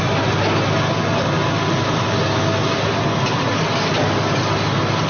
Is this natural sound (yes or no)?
yes